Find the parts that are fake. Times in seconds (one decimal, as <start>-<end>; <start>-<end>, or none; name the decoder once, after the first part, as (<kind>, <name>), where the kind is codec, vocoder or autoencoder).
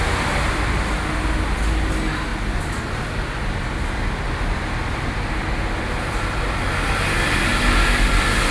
none